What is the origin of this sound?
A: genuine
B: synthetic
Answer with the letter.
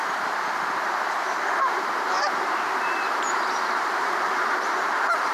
B